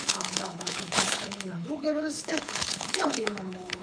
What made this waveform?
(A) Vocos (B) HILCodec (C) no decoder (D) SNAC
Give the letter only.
B